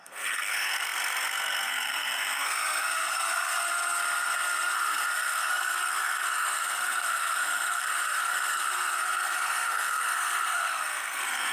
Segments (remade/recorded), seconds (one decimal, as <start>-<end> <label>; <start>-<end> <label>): 0.0-11.5 remade